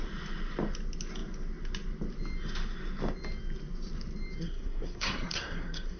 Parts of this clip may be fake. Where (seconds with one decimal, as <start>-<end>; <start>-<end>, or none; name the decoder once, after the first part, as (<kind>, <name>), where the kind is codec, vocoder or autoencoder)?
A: 4.4-6.0 (codec, SNAC)

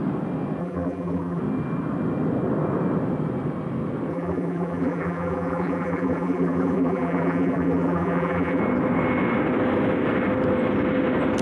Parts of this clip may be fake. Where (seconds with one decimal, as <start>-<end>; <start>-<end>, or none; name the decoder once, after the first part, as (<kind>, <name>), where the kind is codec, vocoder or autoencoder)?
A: 0.6-1.4 (vocoder, BigVGAN v2); 4.1-8.6

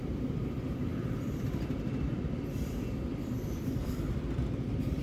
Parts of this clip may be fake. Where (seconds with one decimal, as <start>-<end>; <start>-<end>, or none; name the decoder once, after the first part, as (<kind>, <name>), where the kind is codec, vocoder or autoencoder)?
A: 0.9-3.9 (vocoder, BigVGAN v2)

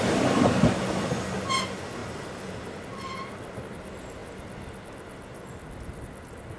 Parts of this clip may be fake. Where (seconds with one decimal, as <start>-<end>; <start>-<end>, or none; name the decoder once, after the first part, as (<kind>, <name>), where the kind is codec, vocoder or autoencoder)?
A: 2.0-2.5 (vocoder, BigVGAN v2); 2.9-3.8

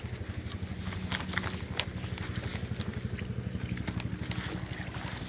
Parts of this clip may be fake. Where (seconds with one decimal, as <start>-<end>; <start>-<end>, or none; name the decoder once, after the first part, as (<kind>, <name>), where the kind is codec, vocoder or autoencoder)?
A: none